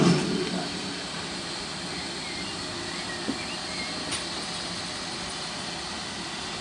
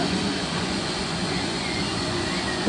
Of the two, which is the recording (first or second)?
first